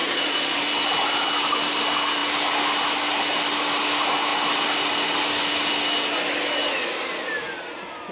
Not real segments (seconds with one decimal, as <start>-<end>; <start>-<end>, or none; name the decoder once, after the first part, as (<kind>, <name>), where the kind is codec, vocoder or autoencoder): 0.0-0.6 (vocoder, Vocos)